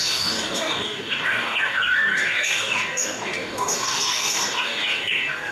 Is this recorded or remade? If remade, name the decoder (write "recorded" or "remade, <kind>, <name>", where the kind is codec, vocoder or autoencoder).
remade, codec, DAC